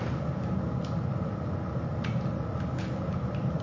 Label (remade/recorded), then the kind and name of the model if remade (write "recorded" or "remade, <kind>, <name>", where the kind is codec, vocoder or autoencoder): recorded